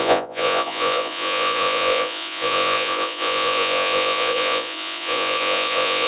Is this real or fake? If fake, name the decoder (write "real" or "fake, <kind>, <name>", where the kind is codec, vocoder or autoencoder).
fake, vocoder, Vocos